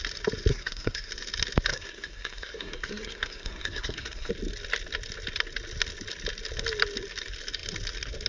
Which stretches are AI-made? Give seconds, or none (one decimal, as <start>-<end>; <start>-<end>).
0.5-1.1; 1.7-4.3